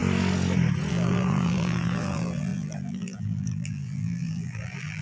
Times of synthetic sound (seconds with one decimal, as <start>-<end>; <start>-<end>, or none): 0.9-5.0